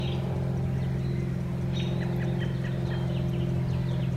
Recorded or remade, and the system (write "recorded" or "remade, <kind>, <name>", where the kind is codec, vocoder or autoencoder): recorded